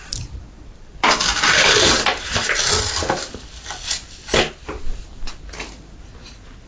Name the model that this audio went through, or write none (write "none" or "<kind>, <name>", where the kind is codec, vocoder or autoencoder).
none